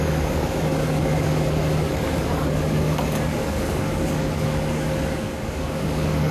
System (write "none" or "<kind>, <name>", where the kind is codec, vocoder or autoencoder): codec, DAC